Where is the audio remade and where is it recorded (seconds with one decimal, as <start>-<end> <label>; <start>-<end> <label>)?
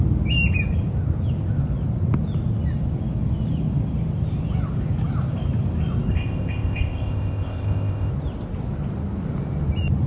0.0-6.1 recorded; 6.1-8.1 remade; 8.1-10.1 recorded